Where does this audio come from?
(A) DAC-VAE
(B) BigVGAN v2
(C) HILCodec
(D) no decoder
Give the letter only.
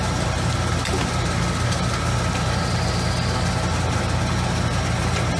D